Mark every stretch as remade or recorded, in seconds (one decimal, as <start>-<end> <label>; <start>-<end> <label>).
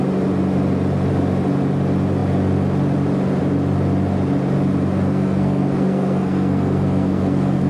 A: 0.0-5.1 recorded; 5.1-7.7 remade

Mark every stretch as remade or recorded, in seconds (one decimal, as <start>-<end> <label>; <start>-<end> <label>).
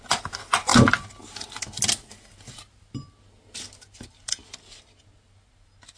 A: 0.0-6.0 recorded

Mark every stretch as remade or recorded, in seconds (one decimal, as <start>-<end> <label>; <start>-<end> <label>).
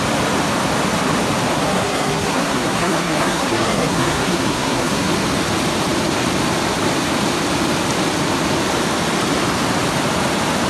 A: 0.0-1.5 recorded; 1.5-5.1 remade; 5.1-10.7 recorded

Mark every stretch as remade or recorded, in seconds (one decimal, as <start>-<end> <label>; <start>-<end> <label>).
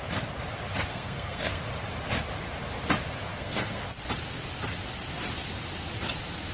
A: 0.0-0.9 recorded; 0.9-1.6 remade; 1.6-3.3 recorded; 3.3-3.8 remade; 3.8-6.5 recorded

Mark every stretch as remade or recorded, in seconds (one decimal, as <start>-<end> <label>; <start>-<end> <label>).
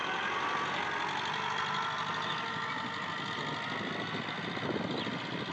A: 0.0-5.5 recorded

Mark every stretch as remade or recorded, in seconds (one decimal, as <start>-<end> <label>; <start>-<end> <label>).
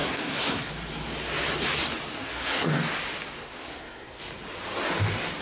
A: 0.0-0.7 remade; 0.7-2.1 recorded; 2.1-2.7 remade; 2.7-3.6 recorded; 3.6-4.2 remade; 4.2-5.4 recorded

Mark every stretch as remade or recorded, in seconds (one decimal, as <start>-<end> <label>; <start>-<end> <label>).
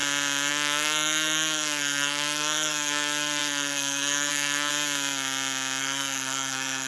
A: 0.0-0.5 recorded; 0.5-4.7 remade; 4.7-5.8 recorded; 5.8-6.9 remade